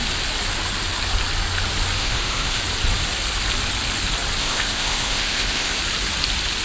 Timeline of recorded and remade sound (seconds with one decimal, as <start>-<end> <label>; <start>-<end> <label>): 0.0-2.0 recorded; 2.0-2.6 remade; 2.6-4.4 recorded; 4.4-5.8 remade; 5.8-6.6 recorded